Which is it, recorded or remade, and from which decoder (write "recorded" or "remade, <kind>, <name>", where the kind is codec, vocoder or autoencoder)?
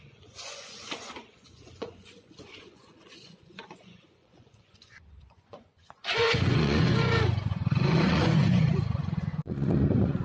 remade, vocoder, Vocos